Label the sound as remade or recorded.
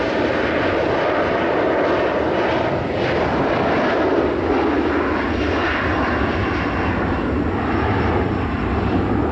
recorded